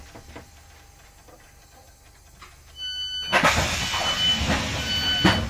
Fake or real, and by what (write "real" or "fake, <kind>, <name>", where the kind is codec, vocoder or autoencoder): real